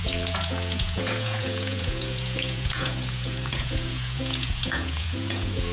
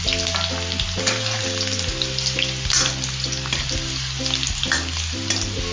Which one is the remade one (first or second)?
first